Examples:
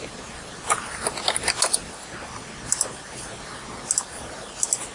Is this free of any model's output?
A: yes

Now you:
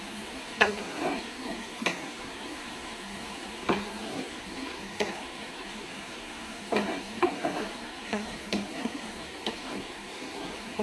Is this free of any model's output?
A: no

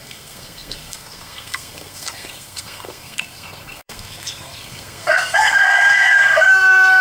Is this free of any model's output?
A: no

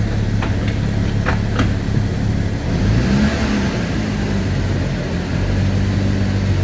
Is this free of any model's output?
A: yes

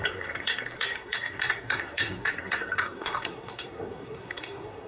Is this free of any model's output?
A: no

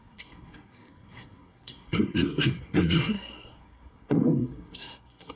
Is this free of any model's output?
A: no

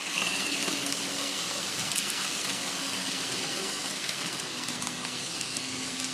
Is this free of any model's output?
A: no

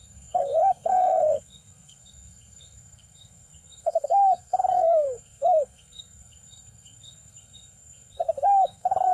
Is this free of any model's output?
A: no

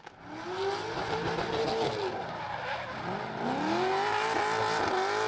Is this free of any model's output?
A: yes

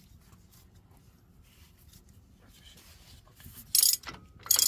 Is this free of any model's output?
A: yes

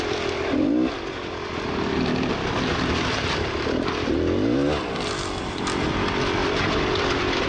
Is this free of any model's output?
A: yes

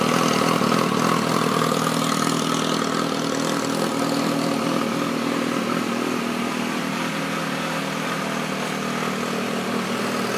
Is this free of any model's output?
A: yes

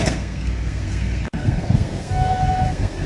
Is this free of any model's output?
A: no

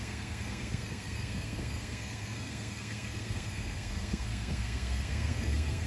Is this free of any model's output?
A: no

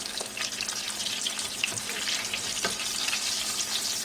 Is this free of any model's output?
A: yes